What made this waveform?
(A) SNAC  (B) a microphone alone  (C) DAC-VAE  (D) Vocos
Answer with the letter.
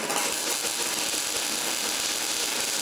B